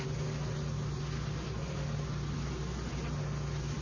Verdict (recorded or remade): recorded